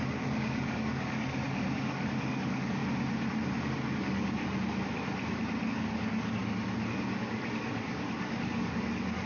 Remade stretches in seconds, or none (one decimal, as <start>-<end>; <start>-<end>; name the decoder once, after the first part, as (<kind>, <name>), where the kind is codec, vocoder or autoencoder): 0.0-2.8 (codec, DAC); 4.0-4.4; 5.7-6.4; 7.2-9.3